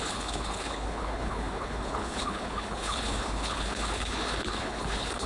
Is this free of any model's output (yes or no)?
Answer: no